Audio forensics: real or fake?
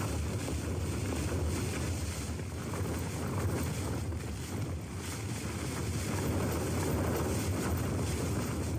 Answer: real